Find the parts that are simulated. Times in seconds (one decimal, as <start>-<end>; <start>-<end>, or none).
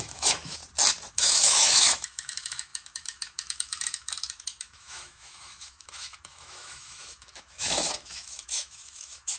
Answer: 0.0-0.6; 1.1-9.4